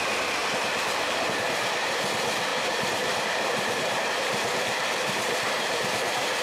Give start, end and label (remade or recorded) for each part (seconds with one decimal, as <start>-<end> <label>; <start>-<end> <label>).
0.0-0.4 recorded; 0.4-1.6 remade; 1.6-2.5 recorded; 2.5-6.4 remade